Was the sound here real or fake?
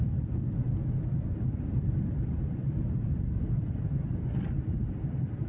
real